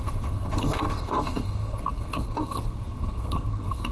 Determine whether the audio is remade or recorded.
remade